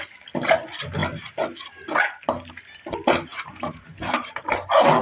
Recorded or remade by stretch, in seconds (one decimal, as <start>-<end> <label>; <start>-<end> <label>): 0.0-3.3 recorded; 3.3-5.0 remade